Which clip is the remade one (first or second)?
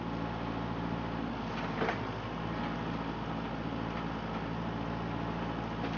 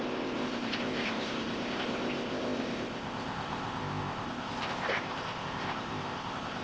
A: second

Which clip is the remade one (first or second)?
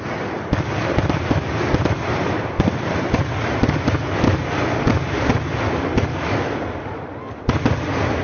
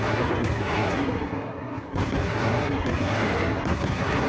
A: second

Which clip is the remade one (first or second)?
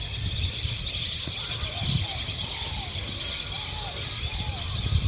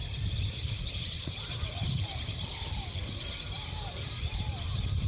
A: second